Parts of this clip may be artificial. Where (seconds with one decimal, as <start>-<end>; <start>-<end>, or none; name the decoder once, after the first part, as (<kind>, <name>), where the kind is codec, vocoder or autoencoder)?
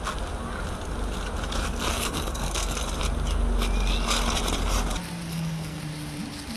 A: 1.9-2.8 (codec, SNAC); 5.3-5.8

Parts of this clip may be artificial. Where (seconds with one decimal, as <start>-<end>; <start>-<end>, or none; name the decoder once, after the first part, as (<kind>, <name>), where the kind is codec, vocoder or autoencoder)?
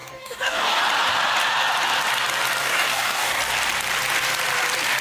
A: 0.0-0.8 (codec, DAC); 2.6-3.4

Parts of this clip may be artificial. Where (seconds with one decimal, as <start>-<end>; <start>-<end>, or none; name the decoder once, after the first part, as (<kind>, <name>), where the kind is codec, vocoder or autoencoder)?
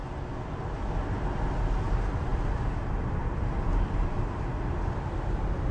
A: none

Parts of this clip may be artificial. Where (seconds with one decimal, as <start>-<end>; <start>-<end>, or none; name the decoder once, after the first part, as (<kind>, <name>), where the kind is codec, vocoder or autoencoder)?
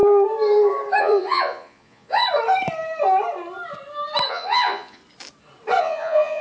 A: 1.0-2.2 (vocoder, Vocos); 4.3-5.0; 5.8-6.4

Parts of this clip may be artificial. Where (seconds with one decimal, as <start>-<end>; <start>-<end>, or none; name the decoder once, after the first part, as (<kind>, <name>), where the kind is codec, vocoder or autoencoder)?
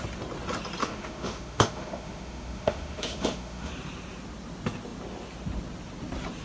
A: 0.8-3.7 (autoencoder, DAC-VAE)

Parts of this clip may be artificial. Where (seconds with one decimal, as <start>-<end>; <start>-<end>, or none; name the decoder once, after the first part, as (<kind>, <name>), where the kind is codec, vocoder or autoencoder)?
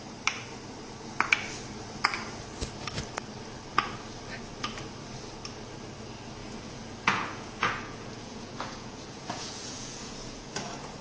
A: 6.4-10.5 (vocoder, Vocos)